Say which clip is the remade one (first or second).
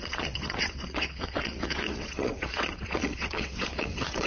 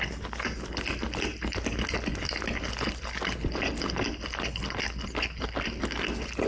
first